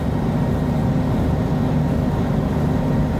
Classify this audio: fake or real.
real